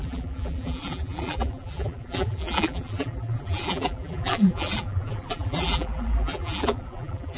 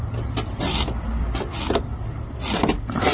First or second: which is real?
second